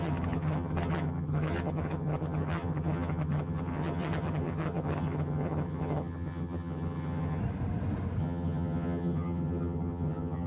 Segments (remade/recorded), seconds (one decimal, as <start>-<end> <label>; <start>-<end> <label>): 0.0-7.4 remade; 7.4-8.2 recorded; 8.2-10.5 remade